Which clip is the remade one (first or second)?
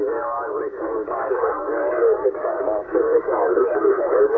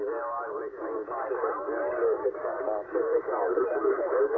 first